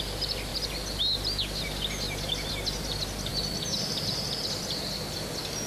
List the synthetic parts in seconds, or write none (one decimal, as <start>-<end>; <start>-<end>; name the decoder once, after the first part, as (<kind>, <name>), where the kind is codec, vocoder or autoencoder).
none